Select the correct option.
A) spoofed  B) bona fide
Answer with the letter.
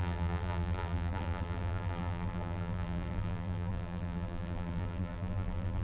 A